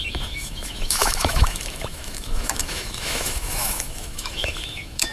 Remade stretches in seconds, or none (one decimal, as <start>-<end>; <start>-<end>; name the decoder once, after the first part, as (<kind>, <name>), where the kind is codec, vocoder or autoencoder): 0.0-5.1 (autoencoder, DAC-VAE)